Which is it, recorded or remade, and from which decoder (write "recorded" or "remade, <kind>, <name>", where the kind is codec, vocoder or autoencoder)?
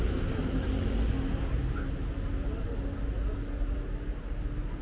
recorded